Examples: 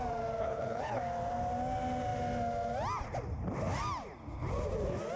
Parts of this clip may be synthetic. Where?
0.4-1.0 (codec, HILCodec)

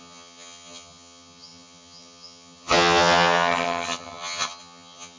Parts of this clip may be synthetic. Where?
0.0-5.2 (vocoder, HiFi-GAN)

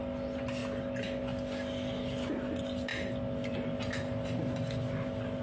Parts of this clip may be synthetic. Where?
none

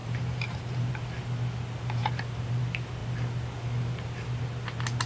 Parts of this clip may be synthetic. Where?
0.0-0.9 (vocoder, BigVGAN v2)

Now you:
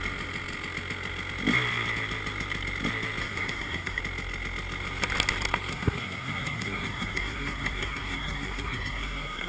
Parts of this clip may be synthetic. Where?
3.2-4.0 (codec, SNAC); 5.7-9.5